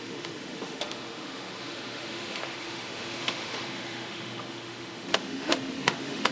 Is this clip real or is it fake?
fake